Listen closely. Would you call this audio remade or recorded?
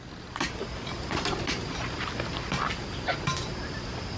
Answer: recorded